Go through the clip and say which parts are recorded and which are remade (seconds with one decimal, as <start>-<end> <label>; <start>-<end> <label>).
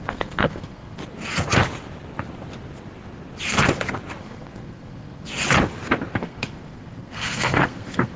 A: 0.0-1.0 remade; 1.0-4.2 recorded; 4.2-5.3 remade; 5.3-6.2 recorded; 6.2-8.2 remade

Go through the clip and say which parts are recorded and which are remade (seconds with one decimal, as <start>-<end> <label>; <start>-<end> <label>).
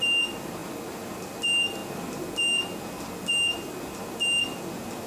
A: 0.0-5.1 recorded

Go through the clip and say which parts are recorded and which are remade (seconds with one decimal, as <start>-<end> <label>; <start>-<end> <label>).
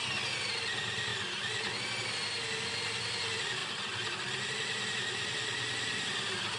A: 0.0-6.6 recorded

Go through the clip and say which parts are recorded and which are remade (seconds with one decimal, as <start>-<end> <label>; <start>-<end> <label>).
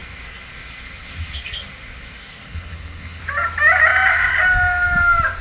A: 0.0-3.2 remade; 3.2-5.4 recorded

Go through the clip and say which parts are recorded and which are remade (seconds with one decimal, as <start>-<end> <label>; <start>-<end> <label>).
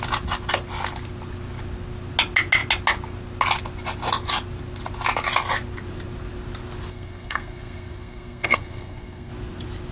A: 0.0-6.9 recorded; 6.9-9.3 remade; 9.3-9.9 recorded